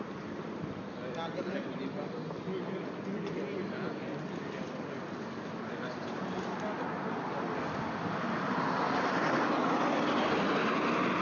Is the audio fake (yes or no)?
no